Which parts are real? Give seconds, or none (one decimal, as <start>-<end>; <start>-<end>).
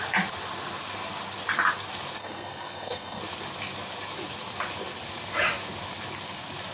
0.0-2.2; 3.2-6.7